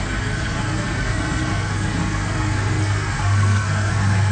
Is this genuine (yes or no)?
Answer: no